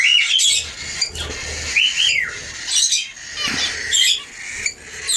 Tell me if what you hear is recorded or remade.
recorded